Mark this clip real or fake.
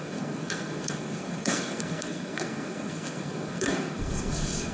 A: fake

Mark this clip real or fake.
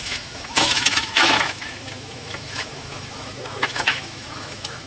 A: fake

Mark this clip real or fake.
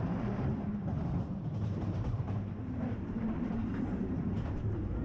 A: fake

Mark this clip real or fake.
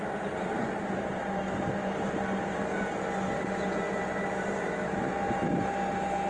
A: real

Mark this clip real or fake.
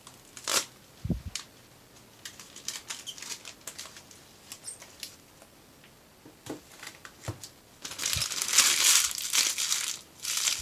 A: real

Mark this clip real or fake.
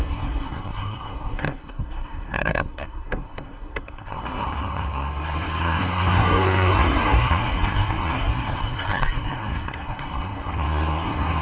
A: fake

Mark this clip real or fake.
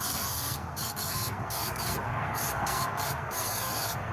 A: fake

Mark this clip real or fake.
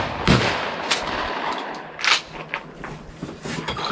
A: real